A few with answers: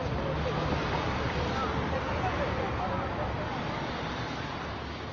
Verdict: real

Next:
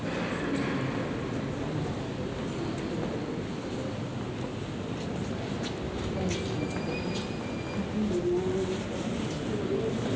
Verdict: real